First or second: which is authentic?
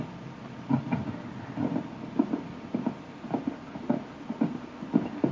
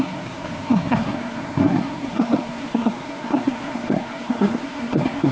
first